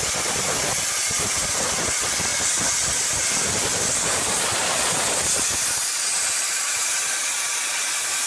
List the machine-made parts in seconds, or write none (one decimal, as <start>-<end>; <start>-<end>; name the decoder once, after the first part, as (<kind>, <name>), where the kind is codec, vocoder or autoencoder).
none